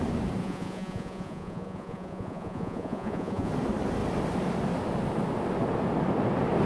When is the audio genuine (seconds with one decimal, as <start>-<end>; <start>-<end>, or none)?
0.0-0.4; 3.5-6.7